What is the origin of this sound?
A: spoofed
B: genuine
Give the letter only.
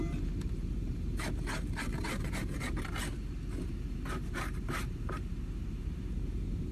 A